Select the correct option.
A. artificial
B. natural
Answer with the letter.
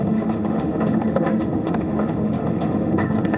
A